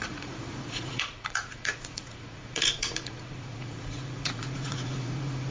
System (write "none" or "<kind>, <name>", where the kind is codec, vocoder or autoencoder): vocoder, Vocos